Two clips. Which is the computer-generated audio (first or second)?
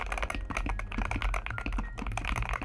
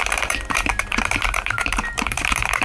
second